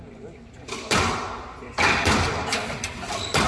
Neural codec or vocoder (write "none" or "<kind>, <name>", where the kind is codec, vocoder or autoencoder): none